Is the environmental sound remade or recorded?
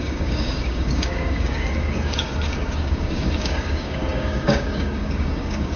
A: remade